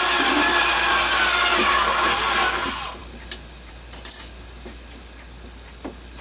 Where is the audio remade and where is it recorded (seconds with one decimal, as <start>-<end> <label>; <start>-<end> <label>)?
0.0-6.2 recorded